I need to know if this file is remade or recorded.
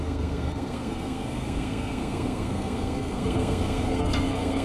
remade